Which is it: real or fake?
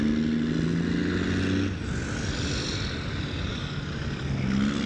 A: real